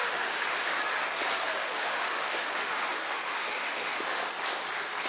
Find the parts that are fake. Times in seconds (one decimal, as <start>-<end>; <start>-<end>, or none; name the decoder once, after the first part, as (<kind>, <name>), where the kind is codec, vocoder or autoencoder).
0.0-0.8 (autoencoder, DAC-VAE); 1.6-4.3

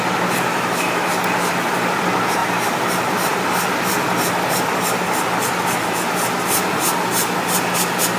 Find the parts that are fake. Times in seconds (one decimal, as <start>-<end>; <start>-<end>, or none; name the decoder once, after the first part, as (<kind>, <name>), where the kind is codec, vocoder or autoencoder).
0.5-1.1 (autoencoder, DAC-VAE)

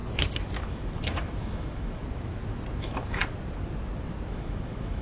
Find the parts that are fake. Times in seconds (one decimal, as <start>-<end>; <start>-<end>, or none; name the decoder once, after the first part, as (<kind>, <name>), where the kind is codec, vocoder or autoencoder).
0.6-2.0 (autoencoder, DAC-VAE); 2.8-3.2; 4.3-5.0

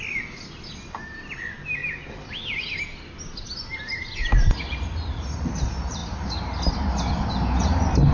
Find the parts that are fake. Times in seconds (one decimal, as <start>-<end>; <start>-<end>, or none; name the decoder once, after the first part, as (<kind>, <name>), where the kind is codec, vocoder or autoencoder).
none

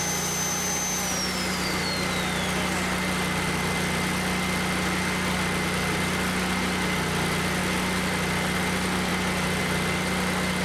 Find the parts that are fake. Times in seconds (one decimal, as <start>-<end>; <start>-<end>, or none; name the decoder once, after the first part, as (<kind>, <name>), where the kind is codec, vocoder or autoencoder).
none

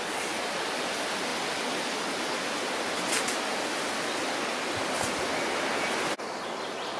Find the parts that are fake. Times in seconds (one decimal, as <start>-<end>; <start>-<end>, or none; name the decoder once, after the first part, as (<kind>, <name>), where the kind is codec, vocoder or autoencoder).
none

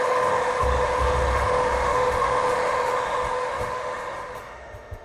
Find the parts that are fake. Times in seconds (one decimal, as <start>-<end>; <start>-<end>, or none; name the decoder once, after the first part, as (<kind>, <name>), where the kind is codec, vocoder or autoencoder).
0.0-5.0 (autoencoder, DAC-VAE)